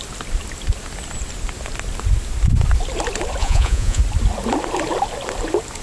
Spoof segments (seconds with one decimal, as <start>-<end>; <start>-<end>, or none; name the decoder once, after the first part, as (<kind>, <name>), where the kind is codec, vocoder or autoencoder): 3.4-4.0 (vocoder, Vocos)